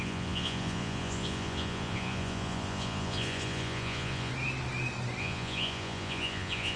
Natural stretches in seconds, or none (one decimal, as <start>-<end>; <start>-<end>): 4.3-5.2

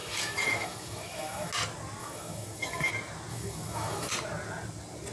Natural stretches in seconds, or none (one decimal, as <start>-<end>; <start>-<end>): 1.5-2.0; 2.9-3.3; 4.1-5.1

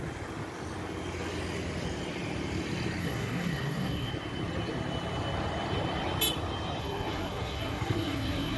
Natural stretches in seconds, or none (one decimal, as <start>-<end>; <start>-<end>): 0.0-3.0; 4.1-6.8

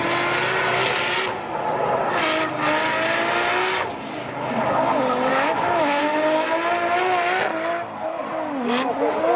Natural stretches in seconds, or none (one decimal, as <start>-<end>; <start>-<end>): 0.0-5.3; 6.0-9.4

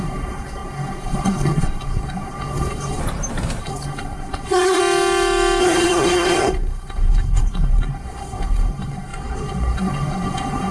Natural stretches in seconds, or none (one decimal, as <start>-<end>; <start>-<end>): 3.0-3.6; 4.8-5.6

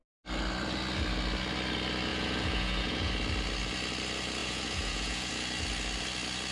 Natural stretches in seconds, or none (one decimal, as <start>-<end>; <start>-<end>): 0.0-2.1; 3.1-4.4; 5.3-6.5

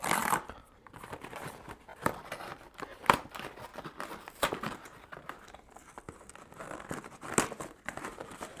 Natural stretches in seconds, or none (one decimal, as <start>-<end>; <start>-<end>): 0.0-0.6; 1.5-1.9; 2.8-3.7; 7.1-8.6

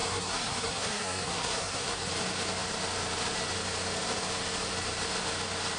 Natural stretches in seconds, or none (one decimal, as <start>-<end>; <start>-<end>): 2.1-5.8